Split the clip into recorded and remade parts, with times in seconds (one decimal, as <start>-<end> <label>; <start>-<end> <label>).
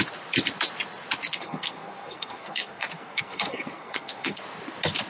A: 0.0-1.3 recorded; 1.3-4.4 remade; 4.4-5.1 recorded